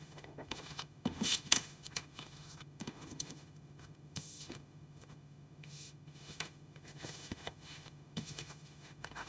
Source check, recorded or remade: remade